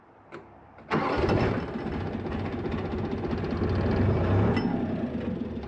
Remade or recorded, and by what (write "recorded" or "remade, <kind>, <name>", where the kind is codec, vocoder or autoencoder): recorded